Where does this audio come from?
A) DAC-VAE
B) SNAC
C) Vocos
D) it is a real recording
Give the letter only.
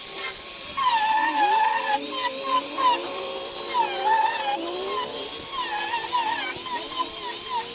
D